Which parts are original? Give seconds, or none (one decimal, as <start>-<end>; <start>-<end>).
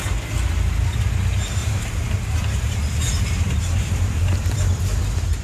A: 0.0-1.6; 4.8-5.4